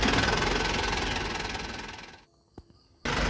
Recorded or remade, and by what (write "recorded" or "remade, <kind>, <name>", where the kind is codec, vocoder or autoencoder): recorded